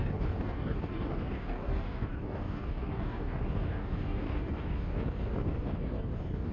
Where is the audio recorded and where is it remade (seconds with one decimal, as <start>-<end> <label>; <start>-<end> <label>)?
0.0-6.5 remade